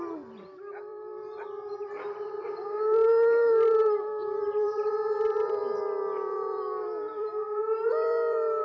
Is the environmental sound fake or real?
fake